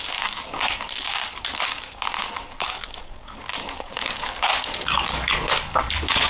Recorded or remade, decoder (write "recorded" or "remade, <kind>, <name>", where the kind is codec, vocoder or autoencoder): remade, codec, DAC